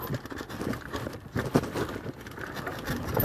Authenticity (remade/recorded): recorded